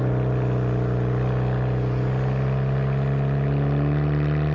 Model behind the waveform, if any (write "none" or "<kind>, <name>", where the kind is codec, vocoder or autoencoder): none